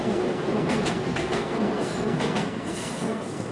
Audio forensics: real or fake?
fake